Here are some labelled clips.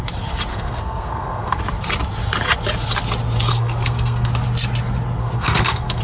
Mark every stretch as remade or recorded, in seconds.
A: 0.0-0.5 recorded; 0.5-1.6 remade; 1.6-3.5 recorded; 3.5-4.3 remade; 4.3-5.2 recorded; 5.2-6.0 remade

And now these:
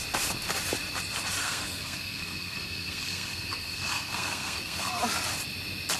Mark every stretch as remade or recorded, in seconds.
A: 0.0-1.4 recorded; 1.4-5.0 remade; 5.0-6.0 recorded

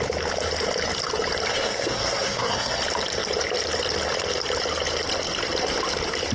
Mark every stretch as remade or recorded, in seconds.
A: 0.0-1.5 recorded; 1.5-2.8 remade; 2.8-6.3 recorded